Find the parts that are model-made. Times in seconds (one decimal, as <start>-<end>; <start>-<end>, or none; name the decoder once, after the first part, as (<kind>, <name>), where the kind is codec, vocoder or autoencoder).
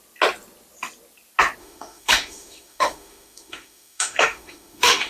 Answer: 1.6-5.1 (autoencoder, DAC-VAE)